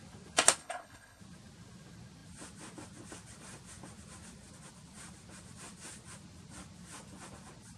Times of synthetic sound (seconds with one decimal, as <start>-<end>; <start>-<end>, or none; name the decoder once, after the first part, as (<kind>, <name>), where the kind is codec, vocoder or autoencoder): 0.6-1.2 (codec, HILCodec)